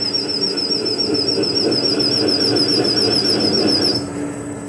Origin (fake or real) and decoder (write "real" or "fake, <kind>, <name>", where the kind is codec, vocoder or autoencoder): real